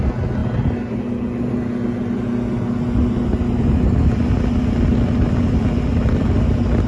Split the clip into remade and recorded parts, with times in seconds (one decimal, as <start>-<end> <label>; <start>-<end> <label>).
0.0-6.9 recorded

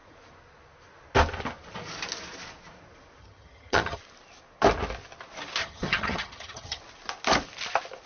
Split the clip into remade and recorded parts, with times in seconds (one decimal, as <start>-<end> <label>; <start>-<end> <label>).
0.0-3.2 recorded; 3.2-4.0 remade; 4.0-5.6 recorded; 5.6-6.8 remade; 6.8-8.1 recorded

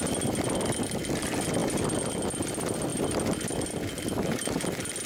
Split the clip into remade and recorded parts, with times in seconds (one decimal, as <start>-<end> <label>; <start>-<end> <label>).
0.0-5.1 recorded

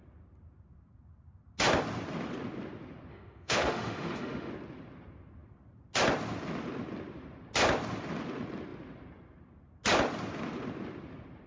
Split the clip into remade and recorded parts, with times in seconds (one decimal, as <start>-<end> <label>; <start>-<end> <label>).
0.0-3.1 recorded; 3.1-4.5 remade; 4.5-11.5 recorded

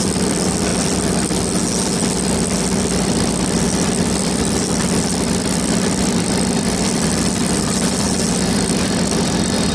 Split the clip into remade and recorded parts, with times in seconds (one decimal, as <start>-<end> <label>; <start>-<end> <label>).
0.0-0.7 remade; 0.7-2.8 recorded; 2.8-9.7 remade